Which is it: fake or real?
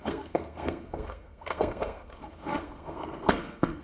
fake